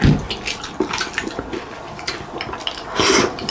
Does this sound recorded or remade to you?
recorded